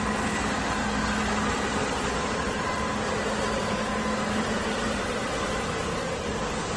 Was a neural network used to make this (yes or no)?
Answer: no